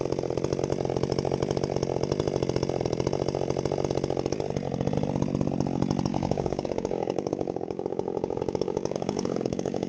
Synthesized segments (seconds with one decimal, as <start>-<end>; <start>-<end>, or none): 6.1-9.9